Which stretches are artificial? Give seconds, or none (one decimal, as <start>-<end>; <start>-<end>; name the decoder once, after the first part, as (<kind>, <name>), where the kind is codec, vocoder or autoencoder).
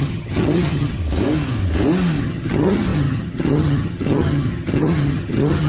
0.0-1.0 (vocoder, HiFi-GAN); 2.2-5.7